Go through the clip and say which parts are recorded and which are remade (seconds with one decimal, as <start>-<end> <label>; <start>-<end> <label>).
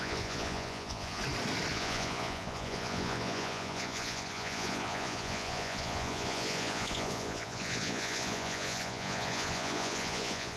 0.0-1.2 remade; 1.2-1.7 recorded; 1.7-10.6 remade